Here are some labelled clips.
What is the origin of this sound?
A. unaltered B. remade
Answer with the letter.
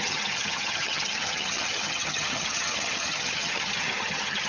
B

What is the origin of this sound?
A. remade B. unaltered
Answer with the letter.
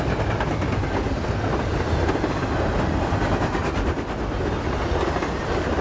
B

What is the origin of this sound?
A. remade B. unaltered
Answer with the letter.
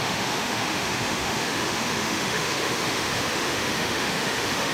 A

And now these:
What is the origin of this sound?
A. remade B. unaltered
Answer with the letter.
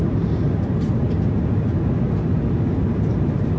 B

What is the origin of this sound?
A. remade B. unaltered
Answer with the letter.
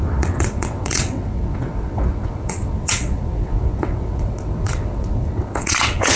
A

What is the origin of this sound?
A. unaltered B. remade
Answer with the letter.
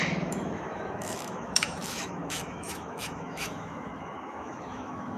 B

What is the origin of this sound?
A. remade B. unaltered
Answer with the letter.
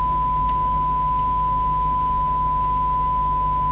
A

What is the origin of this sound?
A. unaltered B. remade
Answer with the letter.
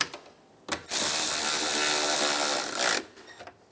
A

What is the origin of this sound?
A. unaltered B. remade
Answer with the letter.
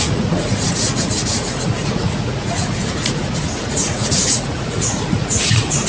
B